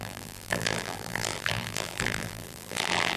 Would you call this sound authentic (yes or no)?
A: no